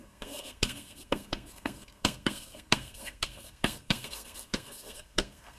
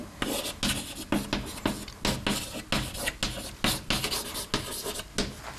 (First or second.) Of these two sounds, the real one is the second